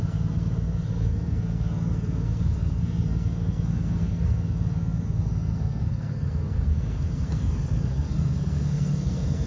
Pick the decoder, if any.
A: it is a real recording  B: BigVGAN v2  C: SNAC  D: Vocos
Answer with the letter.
C